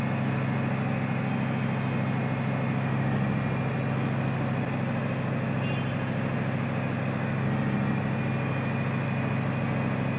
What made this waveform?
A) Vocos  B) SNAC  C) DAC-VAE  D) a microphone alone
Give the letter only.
D